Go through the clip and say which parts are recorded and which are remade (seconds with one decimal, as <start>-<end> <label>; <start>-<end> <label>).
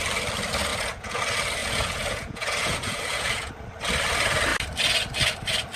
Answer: 0.0-0.7 recorded; 0.7-1.2 remade; 1.2-1.6 recorded; 1.6-3.5 remade; 3.5-5.8 recorded